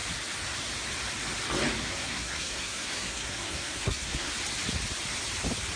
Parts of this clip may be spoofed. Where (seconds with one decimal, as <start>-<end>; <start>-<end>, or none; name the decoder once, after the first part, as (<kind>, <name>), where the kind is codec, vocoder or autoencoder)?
1.8-4.3 (codec, SNAC)